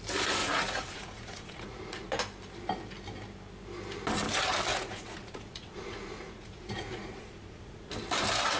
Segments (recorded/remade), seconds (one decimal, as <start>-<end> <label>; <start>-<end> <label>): 0.0-0.4 recorded; 0.4-2.2 remade; 2.2-4.7 recorded; 4.7-7.9 remade; 7.9-8.6 recorded